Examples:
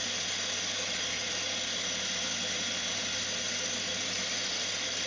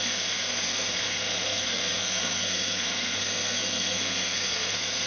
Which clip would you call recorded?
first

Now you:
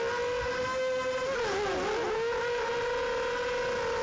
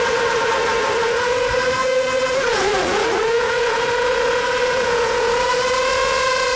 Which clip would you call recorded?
first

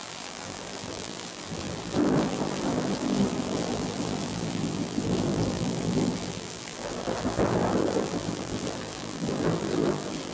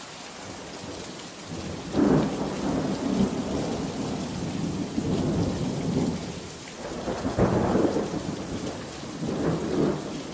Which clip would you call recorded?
second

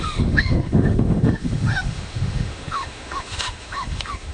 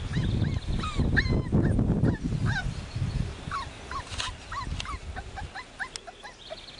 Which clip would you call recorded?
second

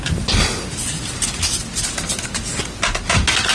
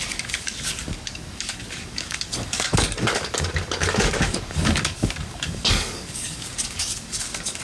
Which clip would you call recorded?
first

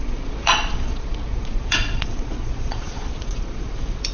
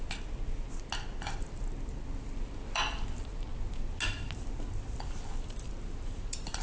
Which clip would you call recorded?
second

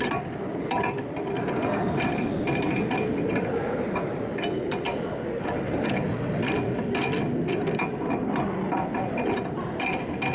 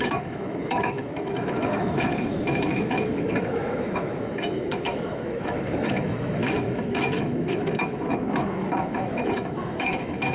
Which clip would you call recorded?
first